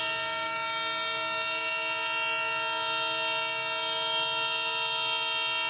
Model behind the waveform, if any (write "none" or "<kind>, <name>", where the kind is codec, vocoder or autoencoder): none